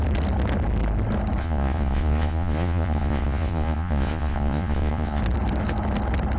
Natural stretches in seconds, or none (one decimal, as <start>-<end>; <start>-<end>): 0.0-1.4; 5.2-6.4